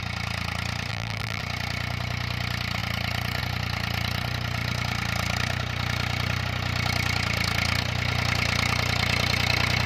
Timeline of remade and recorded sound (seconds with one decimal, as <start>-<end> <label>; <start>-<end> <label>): 0.0-0.9 recorded; 0.9-1.4 remade; 1.4-9.9 recorded